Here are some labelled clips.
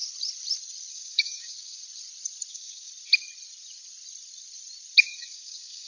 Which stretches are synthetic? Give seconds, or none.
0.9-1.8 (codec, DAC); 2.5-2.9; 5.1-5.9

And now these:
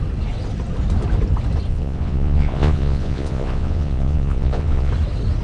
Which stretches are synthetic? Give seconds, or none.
1.7-4.9 (vocoder, Vocos)